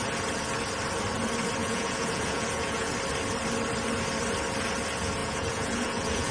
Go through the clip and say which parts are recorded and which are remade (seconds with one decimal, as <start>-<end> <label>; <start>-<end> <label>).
0.0-1.6 recorded; 1.6-2.9 remade; 2.9-5.2 recorded; 5.2-6.3 remade

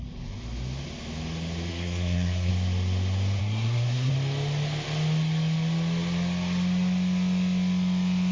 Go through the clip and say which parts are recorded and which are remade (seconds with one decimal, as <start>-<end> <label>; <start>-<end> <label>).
0.0-1.7 recorded; 1.7-2.5 remade; 2.5-3.4 recorded; 3.4-4.1 remade; 4.1-8.3 recorded

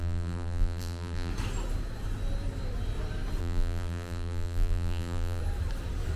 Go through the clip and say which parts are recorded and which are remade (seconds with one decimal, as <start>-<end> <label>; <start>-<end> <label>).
0.0-1.3 remade; 1.3-3.4 recorded; 3.4-5.4 remade; 5.4-6.2 recorded

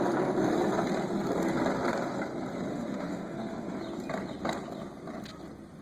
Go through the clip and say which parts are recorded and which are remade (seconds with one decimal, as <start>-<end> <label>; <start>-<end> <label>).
0.0-2.7 recorded; 2.7-3.8 remade; 3.8-5.8 recorded

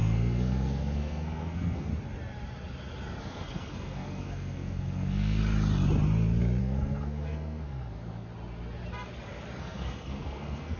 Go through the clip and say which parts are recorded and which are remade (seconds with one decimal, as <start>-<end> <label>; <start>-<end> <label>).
0.0-1.9 remade; 1.9-3.2 recorded; 3.2-5.4 remade; 5.4-6.6 recorded; 6.6-8.3 remade; 8.3-9.6 recorded; 9.6-10.8 remade

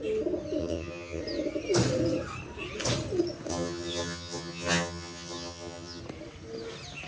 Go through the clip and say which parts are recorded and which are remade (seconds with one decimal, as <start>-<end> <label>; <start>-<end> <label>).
0.0-0.6 recorded; 0.6-1.2 remade; 1.2-3.5 recorded; 3.5-6.0 remade; 6.0-7.1 recorded

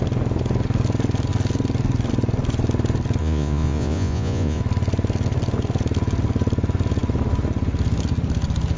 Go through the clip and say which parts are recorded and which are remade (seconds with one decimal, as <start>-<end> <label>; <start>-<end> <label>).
0.0-3.2 recorded; 3.2-4.6 remade; 4.6-8.8 recorded